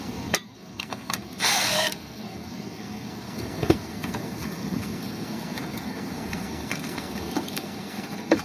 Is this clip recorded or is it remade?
remade